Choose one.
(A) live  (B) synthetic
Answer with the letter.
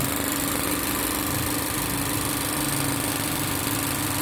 A